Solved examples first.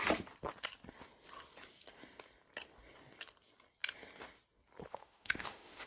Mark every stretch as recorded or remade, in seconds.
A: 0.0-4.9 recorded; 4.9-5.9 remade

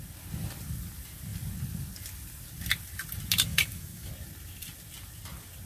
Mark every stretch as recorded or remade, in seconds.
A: 0.0-3.5 recorded; 3.5-4.1 remade; 4.1-5.7 recorded

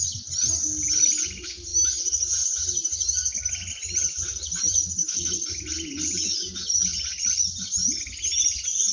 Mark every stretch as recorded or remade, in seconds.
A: 0.0-5.0 recorded; 5.0-5.5 remade; 5.5-8.9 recorded

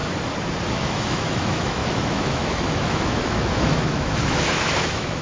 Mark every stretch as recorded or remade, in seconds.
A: 0.0-0.7 recorded; 0.7-5.2 remade

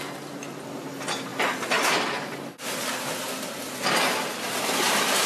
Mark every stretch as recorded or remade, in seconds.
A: 0.0-5.3 recorded